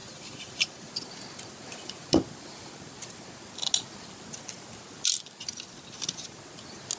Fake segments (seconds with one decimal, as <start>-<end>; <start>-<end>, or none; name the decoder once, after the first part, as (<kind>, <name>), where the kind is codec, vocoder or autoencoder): 0.0-0.9 (vocoder, Vocos)